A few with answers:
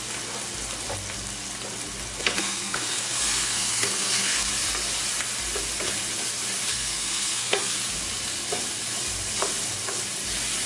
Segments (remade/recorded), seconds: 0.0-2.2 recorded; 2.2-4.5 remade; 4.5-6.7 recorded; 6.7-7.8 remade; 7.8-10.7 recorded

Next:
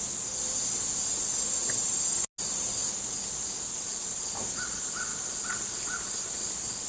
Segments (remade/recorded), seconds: 0.0-6.9 recorded

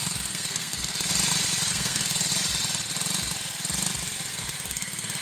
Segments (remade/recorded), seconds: 0.0-1.1 remade; 1.1-1.7 recorded; 1.7-2.3 remade; 2.3-4.3 recorded; 4.3-5.2 remade

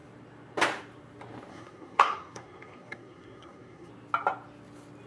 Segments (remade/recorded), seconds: 0.0-1.5 recorded; 1.5-3.9 remade; 3.9-5.1 recorded